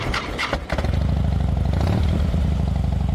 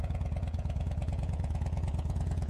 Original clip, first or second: first